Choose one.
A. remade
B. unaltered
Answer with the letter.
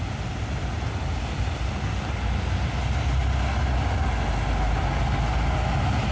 B